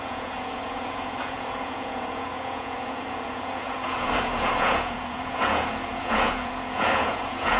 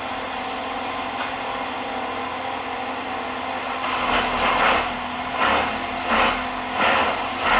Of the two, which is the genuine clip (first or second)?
second